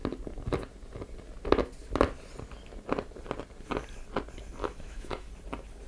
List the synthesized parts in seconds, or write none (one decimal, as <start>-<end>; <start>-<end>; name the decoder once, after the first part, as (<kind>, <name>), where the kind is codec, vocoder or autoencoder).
4.6-5.3 (autoencoder, DAC-VAE)